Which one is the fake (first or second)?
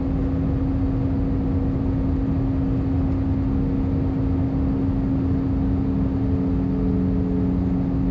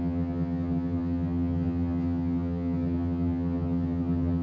second